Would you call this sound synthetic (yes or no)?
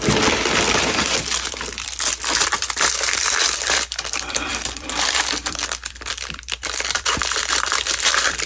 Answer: yes